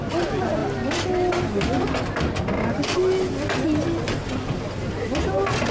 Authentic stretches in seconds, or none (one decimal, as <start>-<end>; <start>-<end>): 0.0-5.7